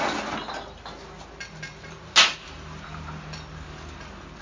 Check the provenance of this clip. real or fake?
real